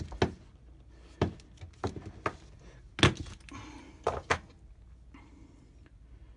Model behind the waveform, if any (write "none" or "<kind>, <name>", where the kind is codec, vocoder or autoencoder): none